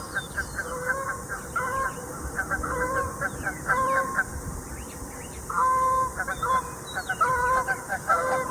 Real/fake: real